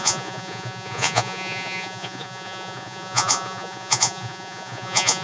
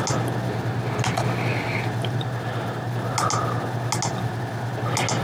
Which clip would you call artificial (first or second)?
first